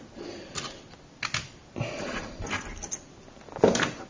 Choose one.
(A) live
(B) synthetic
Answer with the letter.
A